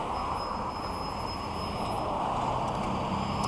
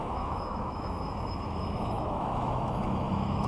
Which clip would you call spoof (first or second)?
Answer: second